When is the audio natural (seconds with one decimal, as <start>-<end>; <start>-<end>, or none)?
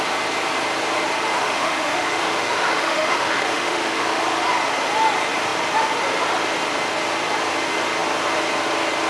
0.0-1.4; 4.2-9.1